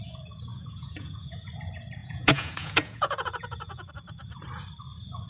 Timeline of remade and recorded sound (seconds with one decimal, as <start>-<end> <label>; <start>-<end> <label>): 0.0-0.5 recorded; 0.5-1.5 remade; 1.5-2.0 recorded; 2.0-3.9 remade; 3.9-5.3 recorded